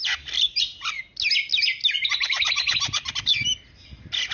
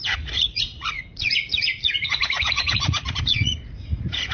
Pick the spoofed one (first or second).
second